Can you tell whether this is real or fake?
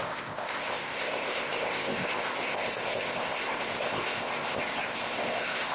fake